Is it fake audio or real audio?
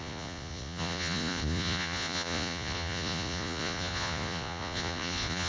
fake